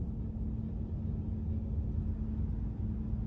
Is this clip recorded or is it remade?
recorded